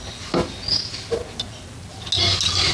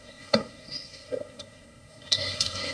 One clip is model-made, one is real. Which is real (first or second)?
first